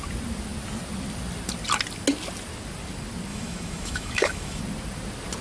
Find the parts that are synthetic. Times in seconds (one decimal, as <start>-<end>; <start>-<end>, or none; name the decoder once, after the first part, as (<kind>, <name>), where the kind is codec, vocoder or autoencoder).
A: 3.3-4.6 (autoencoder, DAC-VAE)